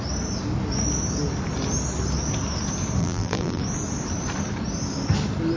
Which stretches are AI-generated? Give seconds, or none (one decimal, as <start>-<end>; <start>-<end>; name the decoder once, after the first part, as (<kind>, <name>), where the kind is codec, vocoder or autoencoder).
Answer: 3.0-3.6 (vocoder, BigVGAN v2)